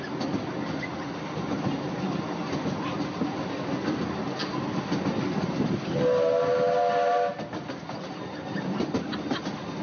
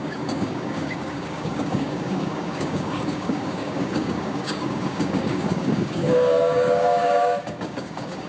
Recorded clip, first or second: first